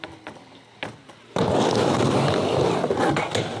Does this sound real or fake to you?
real